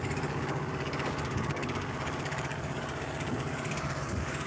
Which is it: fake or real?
fake